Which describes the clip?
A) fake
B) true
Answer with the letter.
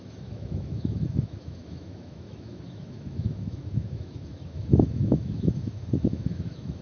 A